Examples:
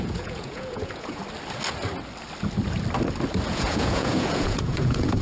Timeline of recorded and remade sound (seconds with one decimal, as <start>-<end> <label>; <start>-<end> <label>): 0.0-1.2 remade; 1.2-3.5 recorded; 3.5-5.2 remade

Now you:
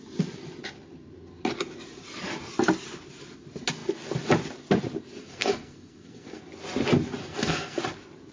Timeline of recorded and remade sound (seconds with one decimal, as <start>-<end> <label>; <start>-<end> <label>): 0.0-5.2 recorded; 5.2-6.4 remade; 6.4-7.2 recorded; 7.2-7.8 remade; 7.8-8.3 recorded

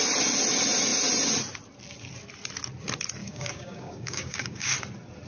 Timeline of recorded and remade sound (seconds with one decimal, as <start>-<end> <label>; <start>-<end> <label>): 0.0-3.2 recorded; 3.2-4.7 remade; 4.7-5.3 recorded

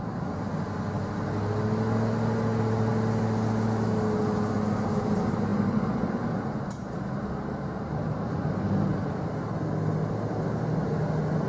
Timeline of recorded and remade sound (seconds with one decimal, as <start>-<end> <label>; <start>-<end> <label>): 0.0-11.5 recorded

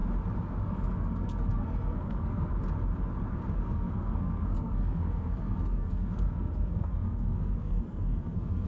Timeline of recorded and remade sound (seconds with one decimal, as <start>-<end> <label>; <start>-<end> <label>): 0.0-0.6 recorded; 0.6-2.5 remade; 2.5-3.5 recorded; 3.5-8.7 remade

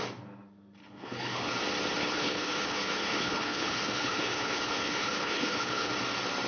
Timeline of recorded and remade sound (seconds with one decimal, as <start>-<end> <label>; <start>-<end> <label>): 0.0-0.8 recorded; 0.8-1.5 remade; 1.5-2.0 recorded; 2.0-5.9 remade; 5.9-6.5 recorded

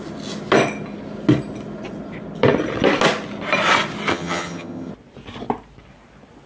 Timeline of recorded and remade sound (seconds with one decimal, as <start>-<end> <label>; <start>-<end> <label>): 0.0-4.1 recorded; 4.1-4.9 remade; 4.9-6.5 recorded